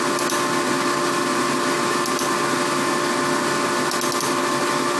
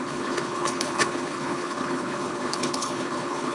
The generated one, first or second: second